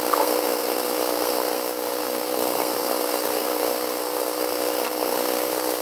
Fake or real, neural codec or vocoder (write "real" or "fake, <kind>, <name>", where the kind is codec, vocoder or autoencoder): fake, codec, SNAC